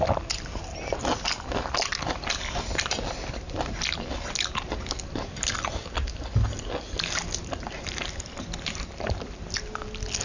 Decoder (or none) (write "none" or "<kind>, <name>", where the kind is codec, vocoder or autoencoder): none